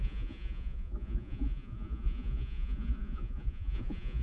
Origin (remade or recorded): remade